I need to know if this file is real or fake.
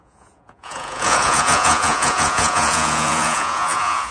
fake